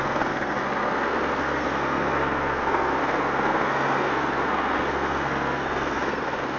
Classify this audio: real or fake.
fake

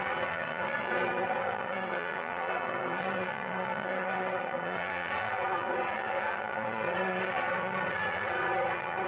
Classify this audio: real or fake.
fake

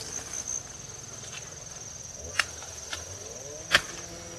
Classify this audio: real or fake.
real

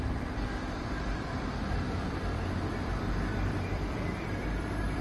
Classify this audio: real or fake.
fake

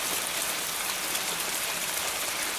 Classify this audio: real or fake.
real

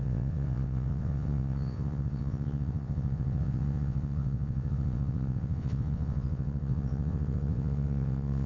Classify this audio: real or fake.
fake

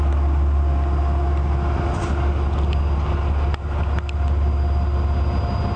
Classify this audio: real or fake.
real